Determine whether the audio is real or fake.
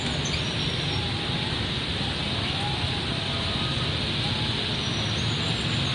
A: real